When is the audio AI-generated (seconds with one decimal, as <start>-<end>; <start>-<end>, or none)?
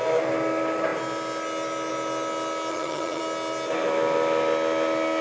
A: 2.7-3.2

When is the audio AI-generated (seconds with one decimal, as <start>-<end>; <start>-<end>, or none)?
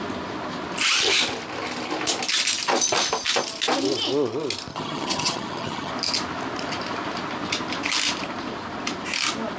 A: 4.7-5.9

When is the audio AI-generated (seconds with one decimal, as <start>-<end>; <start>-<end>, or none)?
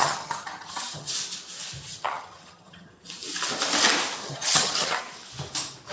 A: 0.0-1.1; 1.9-2.9; 4.2-5.0